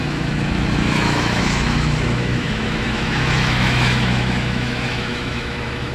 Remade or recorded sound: remade